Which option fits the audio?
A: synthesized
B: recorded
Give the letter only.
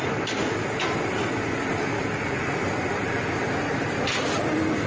B